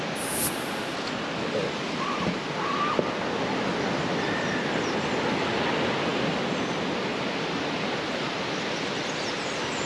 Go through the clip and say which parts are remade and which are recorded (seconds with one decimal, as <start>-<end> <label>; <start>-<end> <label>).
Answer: 0.0-9.9 recorded